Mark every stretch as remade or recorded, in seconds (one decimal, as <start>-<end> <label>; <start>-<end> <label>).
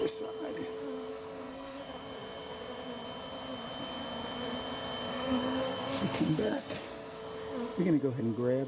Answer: 0.0-1.1 recorded; 1.1-1.8 remade; 1.8-5.1 recorded; 5.1-7.2 remade; 7.2-8.7 recorded